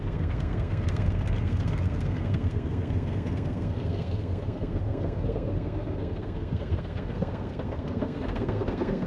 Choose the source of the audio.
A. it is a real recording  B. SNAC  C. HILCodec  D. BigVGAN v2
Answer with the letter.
B